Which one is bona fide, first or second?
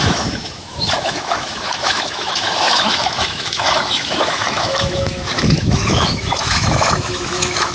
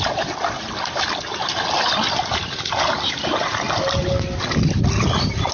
second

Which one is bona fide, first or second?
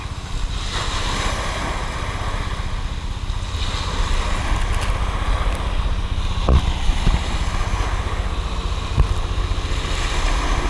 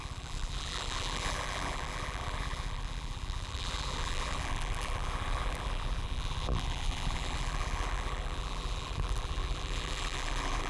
first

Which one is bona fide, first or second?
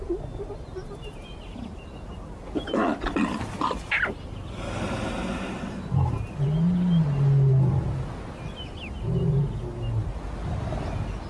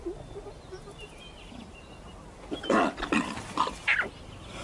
first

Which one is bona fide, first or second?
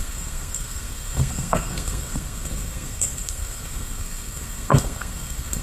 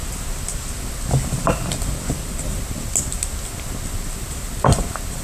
second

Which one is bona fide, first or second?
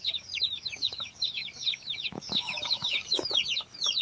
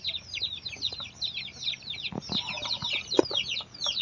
second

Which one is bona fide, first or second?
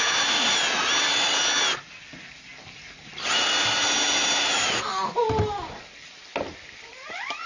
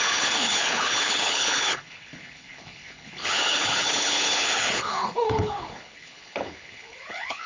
first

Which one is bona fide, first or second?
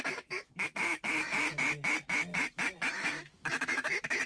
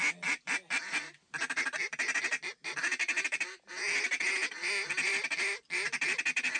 second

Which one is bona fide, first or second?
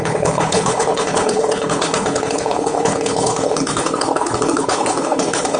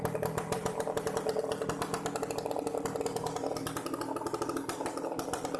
second